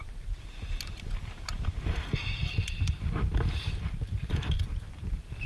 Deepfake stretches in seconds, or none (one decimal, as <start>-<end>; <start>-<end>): none